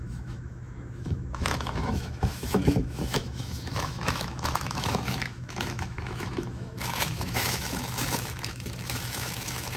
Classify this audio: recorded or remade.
remade